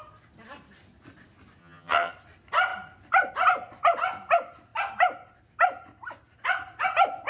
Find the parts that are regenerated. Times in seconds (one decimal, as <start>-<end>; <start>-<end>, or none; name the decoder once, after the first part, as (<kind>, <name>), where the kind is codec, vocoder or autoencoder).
1.6-2.1 (vocoder, HiFi-GAN)